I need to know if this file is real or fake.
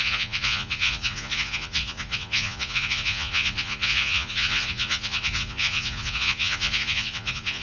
fake